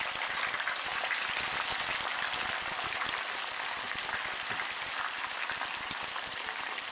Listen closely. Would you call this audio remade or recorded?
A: recorded